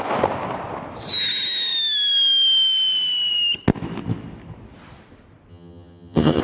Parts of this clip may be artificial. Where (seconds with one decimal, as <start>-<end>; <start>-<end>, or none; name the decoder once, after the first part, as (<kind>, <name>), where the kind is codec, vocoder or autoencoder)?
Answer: 5.5-6.4 (vocoder, HiFi-GAN)